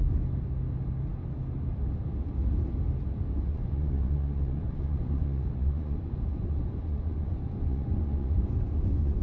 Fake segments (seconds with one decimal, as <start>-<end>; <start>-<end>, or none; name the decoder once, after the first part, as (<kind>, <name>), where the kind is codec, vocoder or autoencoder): 3.5-9.2 (vocoder, Vocos)